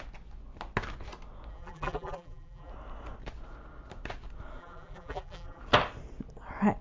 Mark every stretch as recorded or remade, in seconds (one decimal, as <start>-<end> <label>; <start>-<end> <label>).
0.0-1.5 recorded; 1.5-2.7 remade; 2.7-4.6 recorded; 4.6-5.6 remade; 5.6-6.8 recorded